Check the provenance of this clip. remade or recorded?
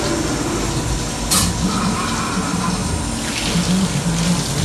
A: recorded